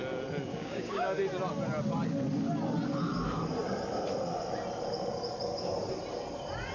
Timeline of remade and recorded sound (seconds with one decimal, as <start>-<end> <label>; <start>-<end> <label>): 0.0-0.5 recorded; 0.5-1.2 remade; 1.2-6.7 recorded